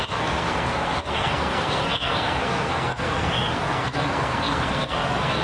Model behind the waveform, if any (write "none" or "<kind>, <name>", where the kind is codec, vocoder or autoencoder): codec, SNAC